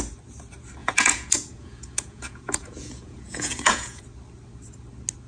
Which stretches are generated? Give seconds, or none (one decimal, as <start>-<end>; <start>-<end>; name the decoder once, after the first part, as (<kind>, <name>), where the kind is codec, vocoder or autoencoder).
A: 0.8-4.0 (vocoder, Vocos)